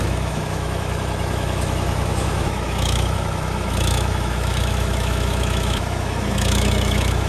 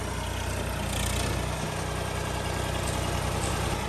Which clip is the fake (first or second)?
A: first